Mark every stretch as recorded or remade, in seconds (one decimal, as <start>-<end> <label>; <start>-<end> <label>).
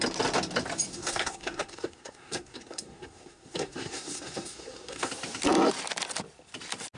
0.0-0.9 recorded; 0.9-5.1 remade; 5.1-7.0 recorded